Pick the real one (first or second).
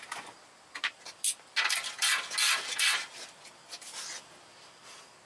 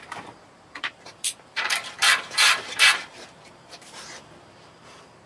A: first